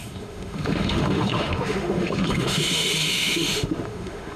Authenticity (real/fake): fake